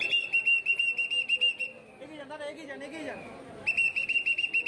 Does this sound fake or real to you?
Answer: real